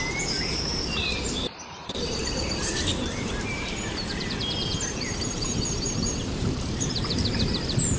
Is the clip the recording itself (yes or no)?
no